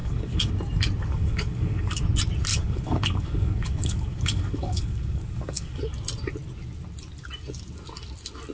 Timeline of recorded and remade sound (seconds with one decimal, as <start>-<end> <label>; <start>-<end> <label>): 0.0-0.5 remade; 0.5-1.0 recorded; 1.0-2.0 remade; 2.0-2.5 recorded; 2.5-5.8 remade; 5.8-8.5 recorded